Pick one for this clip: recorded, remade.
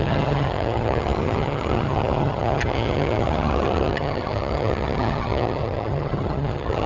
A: remade